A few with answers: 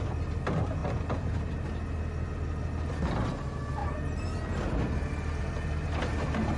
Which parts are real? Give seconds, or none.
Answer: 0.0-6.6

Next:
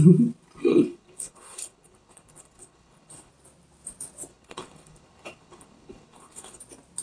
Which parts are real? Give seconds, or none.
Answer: 0.0-0.7; 3.3-4.3; 6.6-7.0